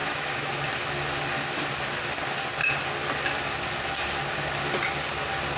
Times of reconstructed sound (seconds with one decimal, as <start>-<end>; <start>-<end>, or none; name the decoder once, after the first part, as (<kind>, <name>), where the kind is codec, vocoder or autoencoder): 0.0-0.5 (autoencoder, DAC-VAE)